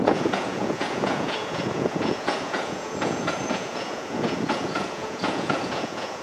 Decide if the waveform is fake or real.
fake